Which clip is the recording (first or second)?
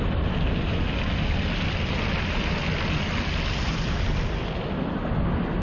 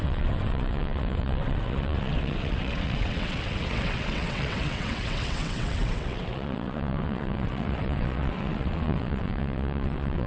first